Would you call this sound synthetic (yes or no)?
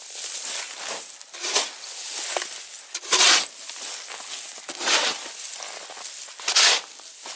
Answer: no